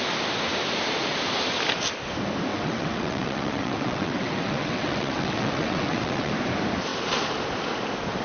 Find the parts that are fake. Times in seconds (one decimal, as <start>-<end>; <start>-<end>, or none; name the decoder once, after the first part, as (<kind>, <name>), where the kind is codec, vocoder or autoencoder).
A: 2.5-6.3 (vocoder, WaveNeXt)